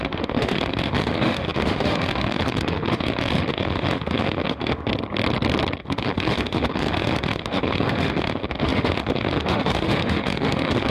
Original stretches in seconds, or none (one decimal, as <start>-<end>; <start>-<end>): 4.9-5.8